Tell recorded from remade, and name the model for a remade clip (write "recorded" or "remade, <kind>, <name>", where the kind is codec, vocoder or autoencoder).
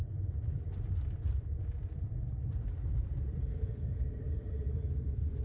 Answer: remade, vocoder, BigVGAN v2